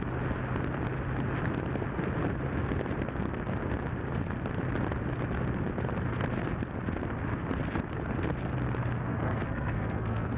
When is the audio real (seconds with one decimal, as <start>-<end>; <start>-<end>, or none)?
0.0-9.1